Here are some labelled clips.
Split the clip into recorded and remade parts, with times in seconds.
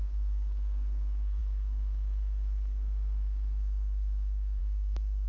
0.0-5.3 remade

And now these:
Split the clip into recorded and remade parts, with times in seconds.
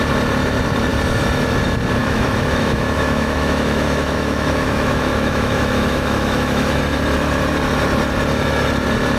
0.0-2.0 recorded; 2.0-6.8 remade; 6.8-9.2 recorded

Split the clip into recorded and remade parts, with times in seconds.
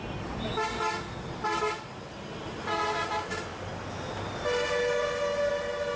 0.0-6.0 recorded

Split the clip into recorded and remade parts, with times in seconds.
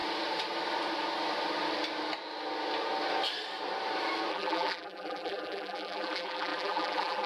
0.0-4.3 recorded; 4.3-7.3 remade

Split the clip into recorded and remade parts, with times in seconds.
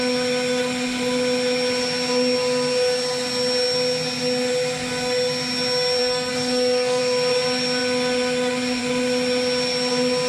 0.0-6.0 recorded; 6.0-7.0 remade; 7.0-10.3 recorded